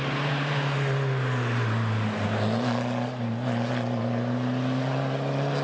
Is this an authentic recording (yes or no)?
yes